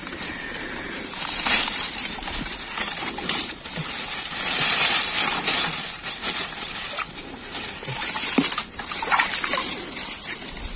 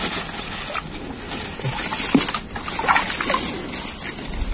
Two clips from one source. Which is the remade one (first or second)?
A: first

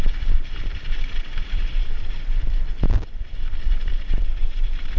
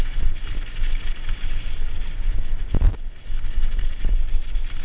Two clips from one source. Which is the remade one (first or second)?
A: first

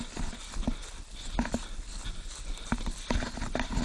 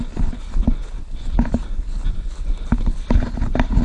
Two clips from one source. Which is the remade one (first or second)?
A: first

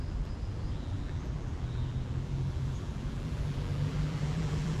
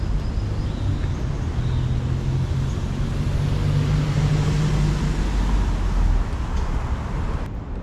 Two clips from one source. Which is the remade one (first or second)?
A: first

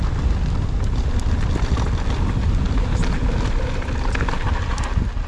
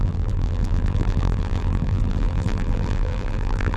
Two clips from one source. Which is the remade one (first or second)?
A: second